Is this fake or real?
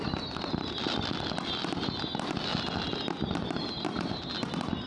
real